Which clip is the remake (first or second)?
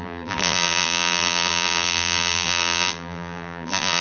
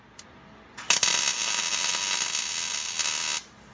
first